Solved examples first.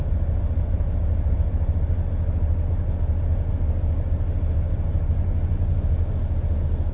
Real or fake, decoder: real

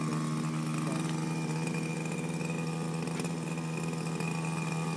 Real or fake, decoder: real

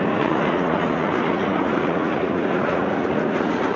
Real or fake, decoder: fake, vocoder, Vocos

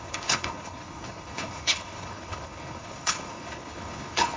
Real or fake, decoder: fake, codec, HILCodec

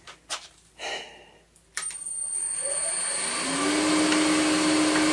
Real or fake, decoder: real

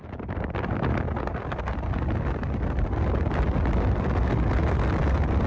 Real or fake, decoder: real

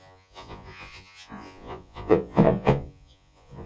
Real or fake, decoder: fake, vocoder, Vocos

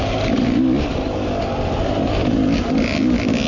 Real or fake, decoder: real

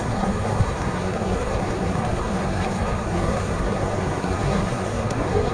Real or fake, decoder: fake, codec, SNAC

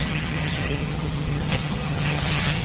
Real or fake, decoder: fake, vocoder, HiFi-GAN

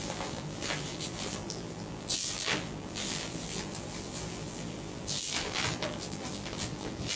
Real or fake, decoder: fake, vocoder, BigVGAN v2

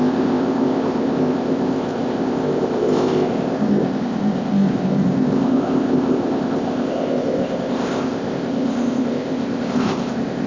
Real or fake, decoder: fake, codec, ZipCodec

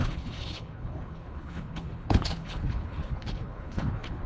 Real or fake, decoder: fake, codec, HILCodec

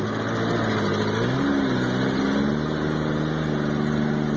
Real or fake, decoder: real